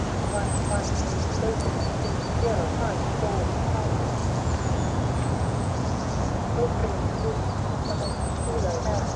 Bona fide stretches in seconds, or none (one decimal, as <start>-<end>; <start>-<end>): 0.0-4.2; 6.3-9.2